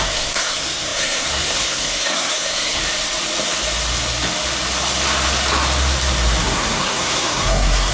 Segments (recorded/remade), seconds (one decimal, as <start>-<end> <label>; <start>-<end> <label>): 0.0-2.8 remade; 2.8-6.4 recorded; 6.4-7.9 remade